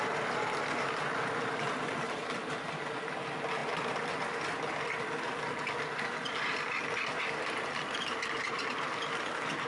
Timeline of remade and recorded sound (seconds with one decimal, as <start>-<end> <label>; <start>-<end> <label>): 0.0-9.7 recorded

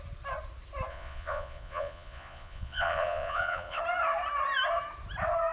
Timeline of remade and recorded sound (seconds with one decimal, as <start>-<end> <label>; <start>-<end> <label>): 0.0-0.9 recorded; 0.9-3.8 remade; 3.8-5.5 recorded

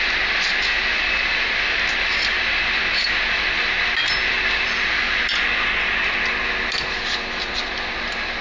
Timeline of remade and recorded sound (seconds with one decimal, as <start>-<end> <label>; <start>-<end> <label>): 0.0-8.4 recorded